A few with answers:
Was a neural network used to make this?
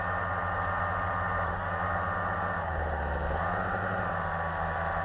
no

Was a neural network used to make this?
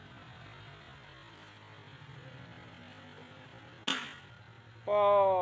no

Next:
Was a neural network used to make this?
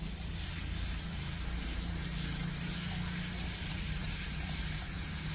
no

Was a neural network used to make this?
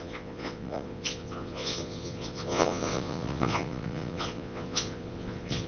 yes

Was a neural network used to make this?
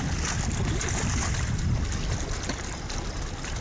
no